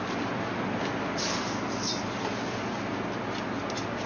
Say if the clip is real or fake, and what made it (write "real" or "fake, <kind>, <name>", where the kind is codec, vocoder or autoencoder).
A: real